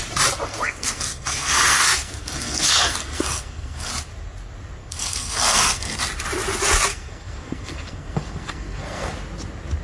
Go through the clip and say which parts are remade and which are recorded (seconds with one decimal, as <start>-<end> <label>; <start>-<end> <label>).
0.0-0.5 recorded; 0.5-3.9 remade; 3.9-4.8 recorded; 4.8-6.0 remade; 6.0-6.9 recorded; 6.9-9.1 remade; 9.1-9.8 recorded